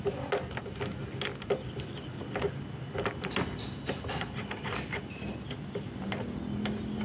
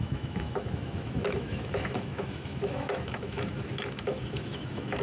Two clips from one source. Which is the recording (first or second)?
first